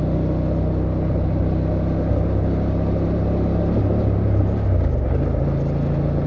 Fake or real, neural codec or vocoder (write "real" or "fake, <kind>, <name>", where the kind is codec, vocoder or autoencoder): real